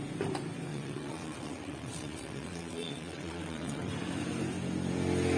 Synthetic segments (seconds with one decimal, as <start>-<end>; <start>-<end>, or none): 0.7-3.9